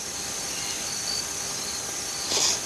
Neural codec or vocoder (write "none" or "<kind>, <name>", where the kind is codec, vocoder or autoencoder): none